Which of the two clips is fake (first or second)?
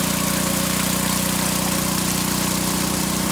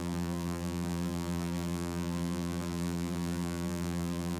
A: second